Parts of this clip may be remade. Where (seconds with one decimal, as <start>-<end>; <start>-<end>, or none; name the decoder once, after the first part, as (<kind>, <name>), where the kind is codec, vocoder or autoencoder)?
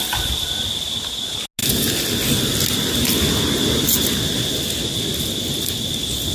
none